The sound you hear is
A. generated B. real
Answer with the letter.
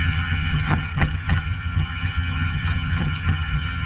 A